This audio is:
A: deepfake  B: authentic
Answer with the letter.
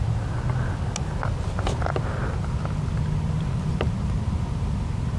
B